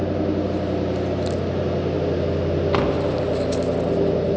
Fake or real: real